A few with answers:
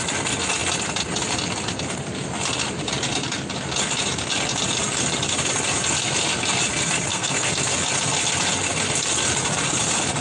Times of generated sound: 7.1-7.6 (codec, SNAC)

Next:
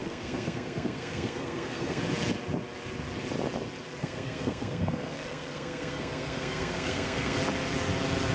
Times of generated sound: 0.0-2.0 (codec, SNAC); 4.0-7.4

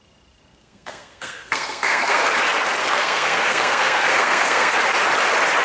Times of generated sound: 0.5-2.3 (codec, SNAC); 2.8-4.8

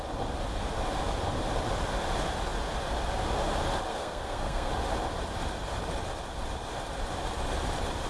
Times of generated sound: 3.9-4.7 (codec, SNAC)

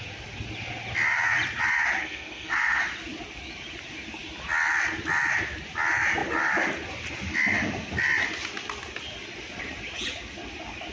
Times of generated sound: 2.0-2.8 (codec, SNAC)

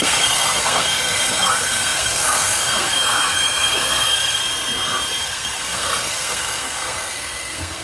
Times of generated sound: 0.0-4.4 (codec, SNAC); 5.2-7.8